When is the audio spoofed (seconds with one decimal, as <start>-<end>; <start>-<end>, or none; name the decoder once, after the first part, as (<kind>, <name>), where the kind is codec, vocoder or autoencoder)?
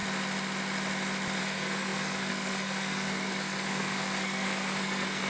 1.4-5.3 (codec, SNAC)